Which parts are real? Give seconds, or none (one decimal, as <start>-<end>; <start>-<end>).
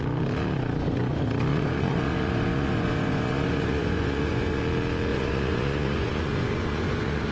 0.0-1.5; 4.6-5.1